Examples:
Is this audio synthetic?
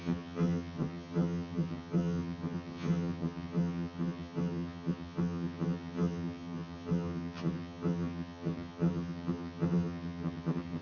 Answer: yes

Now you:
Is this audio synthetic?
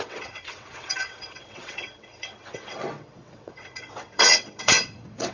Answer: yes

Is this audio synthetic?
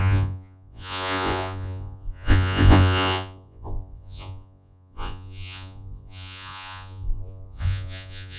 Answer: yes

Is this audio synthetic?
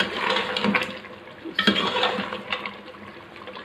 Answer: no